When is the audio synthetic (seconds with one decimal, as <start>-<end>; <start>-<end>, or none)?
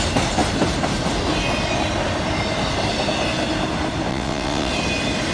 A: 4.1-4.7